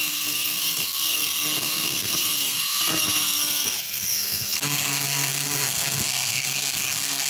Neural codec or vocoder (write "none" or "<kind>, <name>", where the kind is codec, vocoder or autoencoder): codec, SNAC